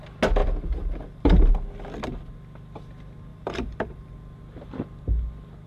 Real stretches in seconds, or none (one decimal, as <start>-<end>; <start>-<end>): 0.0-0.4; 1.5-3.3; 4.1-5.7